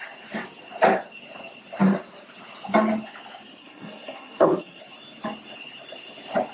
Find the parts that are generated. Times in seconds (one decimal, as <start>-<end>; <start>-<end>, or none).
3.6-4.8

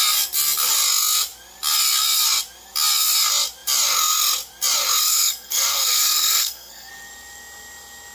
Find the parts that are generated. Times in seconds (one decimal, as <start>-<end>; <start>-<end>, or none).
5.1-6.9

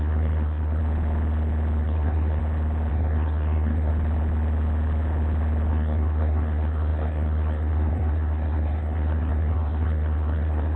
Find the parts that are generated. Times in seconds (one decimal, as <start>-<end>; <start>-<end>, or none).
0.0-0.8; 1.8-2.4; 2.9-3.9; 5.7-10.8

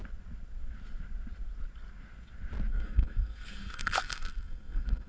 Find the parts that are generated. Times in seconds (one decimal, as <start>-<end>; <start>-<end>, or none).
2.7-5.1

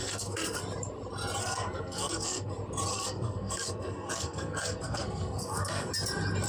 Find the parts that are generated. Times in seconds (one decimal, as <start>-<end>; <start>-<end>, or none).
0.0-0.6; 1.4-2.5; 2.9-5.9

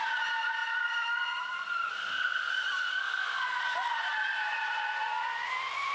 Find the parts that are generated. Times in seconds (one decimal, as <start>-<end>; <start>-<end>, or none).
1.9-2.5; 2.9-3.6

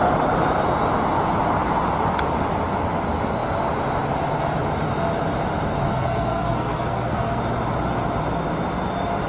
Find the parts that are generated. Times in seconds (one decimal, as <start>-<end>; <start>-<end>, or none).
5.9-7.4